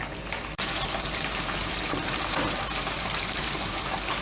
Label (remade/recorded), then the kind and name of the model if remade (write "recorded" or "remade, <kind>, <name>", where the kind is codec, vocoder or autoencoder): remade, vocoder, BigVGAN v2